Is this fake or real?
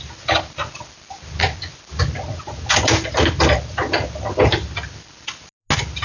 real